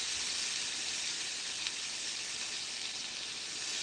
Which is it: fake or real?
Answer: real